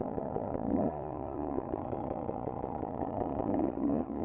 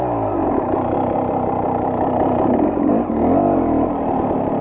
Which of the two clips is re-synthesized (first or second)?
first